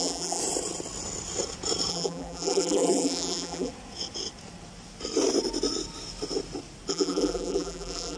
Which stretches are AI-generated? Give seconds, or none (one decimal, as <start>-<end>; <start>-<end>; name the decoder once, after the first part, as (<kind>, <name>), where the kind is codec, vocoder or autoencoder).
0.0-0.4 (vocoder, BigVGAN v2); 1.9-3.7; 6.9-8.2